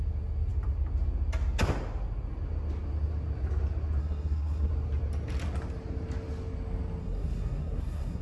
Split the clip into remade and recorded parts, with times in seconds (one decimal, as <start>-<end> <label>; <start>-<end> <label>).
0.0-4.0 recorded; 4.0-4.7 remade; 4.7-7.0 recorded; 7.0-8.2 remade